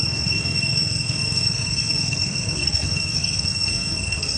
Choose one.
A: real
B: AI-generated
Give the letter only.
B